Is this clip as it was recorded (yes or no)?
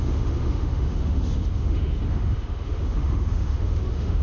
no